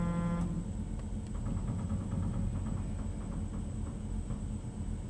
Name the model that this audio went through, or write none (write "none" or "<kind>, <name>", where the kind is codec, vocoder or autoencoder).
none